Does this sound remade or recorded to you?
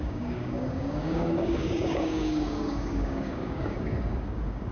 remade